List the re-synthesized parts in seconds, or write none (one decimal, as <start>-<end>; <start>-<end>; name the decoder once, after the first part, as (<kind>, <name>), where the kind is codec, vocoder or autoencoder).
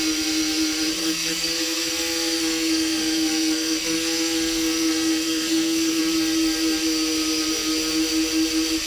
1.0-6.0 (codec, SNAC)